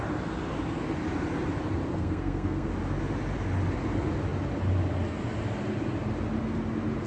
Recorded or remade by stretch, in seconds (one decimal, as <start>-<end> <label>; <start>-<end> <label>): 0.0-1.9 recorded; 1.9-2.7 remade; 2.7-7.1 recorded